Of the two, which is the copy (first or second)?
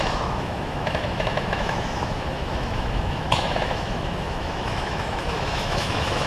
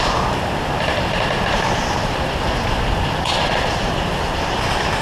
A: first